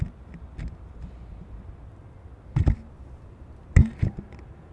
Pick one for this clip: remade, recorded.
recorded